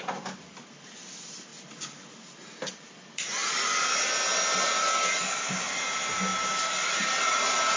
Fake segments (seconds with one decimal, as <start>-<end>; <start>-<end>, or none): none